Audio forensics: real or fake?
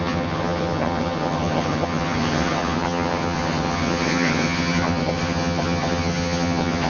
fake